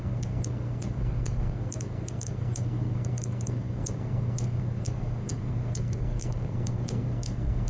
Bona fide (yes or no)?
no